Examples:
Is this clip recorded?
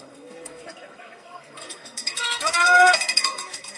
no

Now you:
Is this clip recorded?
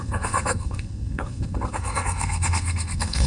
no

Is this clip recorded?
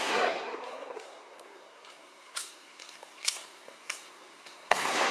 no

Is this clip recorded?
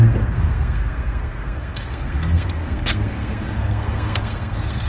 no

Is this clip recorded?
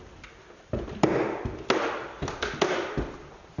yes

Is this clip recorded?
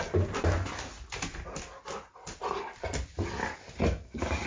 yes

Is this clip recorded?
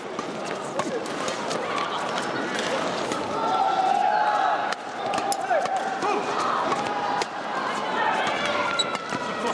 yes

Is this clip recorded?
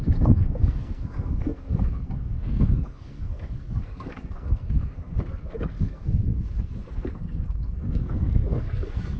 no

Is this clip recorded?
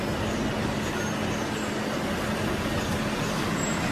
yes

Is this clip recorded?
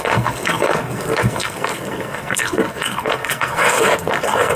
no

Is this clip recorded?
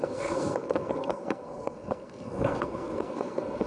no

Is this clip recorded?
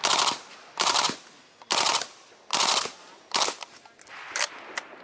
yes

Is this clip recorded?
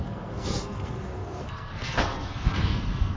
no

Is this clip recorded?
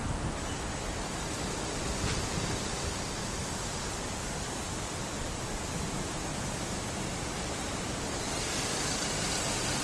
yes